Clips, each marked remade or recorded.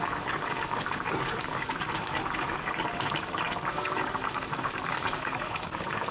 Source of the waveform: remade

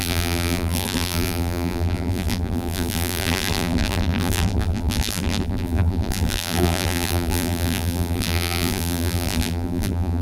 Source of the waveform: remade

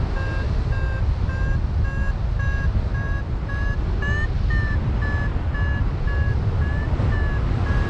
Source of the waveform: recorded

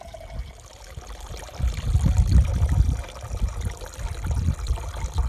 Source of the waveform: recorded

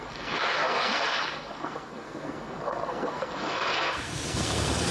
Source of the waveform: remade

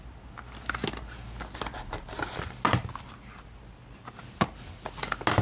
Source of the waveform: recorded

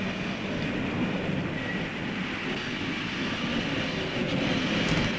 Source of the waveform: recorded